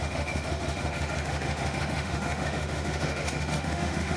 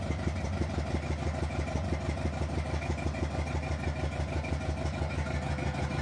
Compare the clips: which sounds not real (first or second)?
first